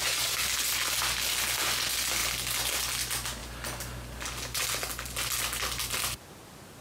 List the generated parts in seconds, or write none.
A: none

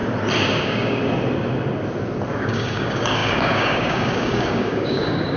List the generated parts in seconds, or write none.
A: 0.6-1.0 (codec, DAC); 2.4-5.4

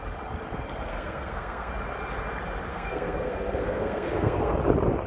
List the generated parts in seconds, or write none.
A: 0.9-1.7 (codec, SNAC); 2.7-4.5

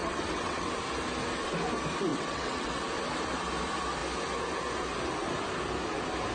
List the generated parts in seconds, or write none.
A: 0.0-0.7 (vocoder, WaveNeXt); 2.1-2.8